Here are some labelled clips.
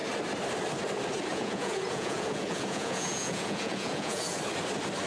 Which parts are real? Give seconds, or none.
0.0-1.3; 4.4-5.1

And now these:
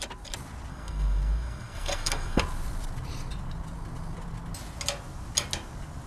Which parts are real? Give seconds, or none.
0.0-0.7; 2.4-6.1

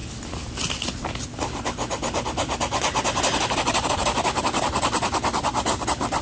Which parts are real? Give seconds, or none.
0.0-6.2

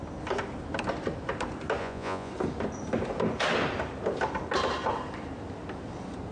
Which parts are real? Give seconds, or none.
0.0-1.8; 2.3-6.3

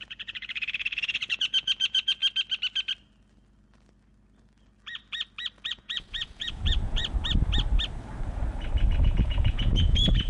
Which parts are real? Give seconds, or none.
2.2-5.7; 7.0-9.0